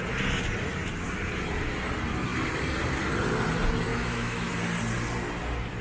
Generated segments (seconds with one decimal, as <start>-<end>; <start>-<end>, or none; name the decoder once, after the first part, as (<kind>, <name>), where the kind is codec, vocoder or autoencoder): 3.9-4.5 (autoencoder, DAC-VAE)